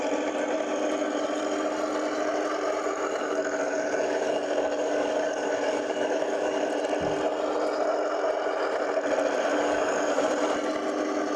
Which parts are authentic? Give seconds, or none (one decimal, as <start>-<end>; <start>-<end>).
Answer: 0.0-3.2; 6.7-9.5; 10.3-11.4